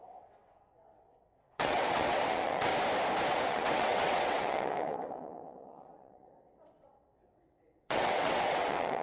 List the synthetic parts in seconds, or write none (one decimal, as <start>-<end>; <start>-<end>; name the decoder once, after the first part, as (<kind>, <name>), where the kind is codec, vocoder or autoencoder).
0.0-2.7 (vocoder, WaveNeXt); 3.3-9.0